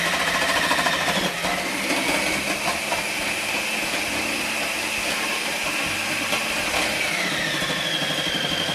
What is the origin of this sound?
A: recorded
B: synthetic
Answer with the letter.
A